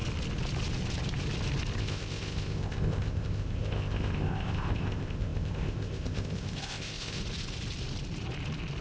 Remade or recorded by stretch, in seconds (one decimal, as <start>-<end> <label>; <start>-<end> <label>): 0.0-1.8 recorded; 1.8-7.2 remade; 7.2-8.8 recorded